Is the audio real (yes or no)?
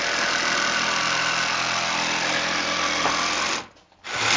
yes